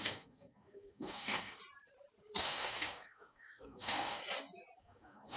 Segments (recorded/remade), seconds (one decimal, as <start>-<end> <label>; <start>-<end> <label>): 0.0-1.6 remade; 1.6-2.4 recorded; 2.4-4.2 remade; 4.2-4.8 recorded; 4.8-5.4 remade